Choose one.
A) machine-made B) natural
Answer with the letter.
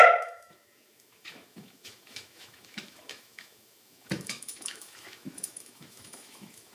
A